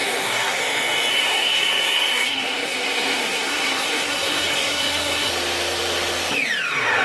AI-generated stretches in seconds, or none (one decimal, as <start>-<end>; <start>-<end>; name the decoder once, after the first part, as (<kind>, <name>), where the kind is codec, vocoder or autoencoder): 0.0-0.6 (codec, SNAC); 1.1-5.3